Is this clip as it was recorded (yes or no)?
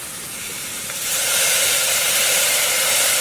no